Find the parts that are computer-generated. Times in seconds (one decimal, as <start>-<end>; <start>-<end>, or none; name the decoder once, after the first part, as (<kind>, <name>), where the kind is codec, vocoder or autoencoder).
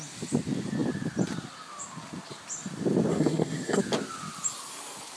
3.1-3.8 (codec, SNAC)